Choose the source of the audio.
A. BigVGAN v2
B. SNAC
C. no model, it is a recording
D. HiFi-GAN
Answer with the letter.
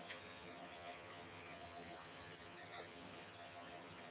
D